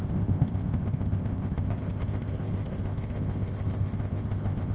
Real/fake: fake